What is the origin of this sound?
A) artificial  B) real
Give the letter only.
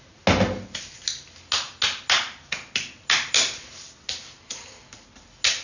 B